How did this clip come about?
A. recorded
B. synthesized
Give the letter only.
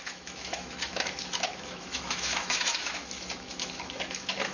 B